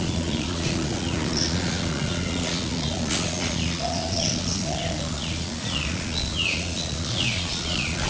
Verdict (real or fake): fake